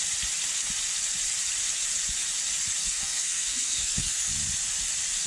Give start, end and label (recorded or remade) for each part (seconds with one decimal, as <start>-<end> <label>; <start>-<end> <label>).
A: 0.0-2.8 recorded; 2.8-4.3 remade; 4.3-5.3 recorded